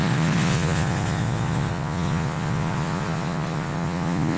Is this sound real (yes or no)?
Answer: no